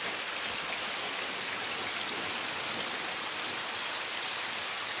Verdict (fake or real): real